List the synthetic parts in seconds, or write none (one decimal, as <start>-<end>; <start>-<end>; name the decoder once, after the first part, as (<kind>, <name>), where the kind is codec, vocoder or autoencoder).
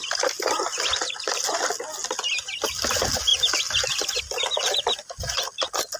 none